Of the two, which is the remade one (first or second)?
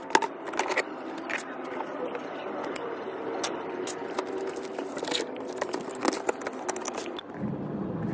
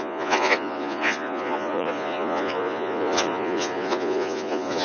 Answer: second